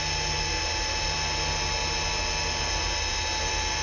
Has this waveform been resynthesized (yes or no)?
no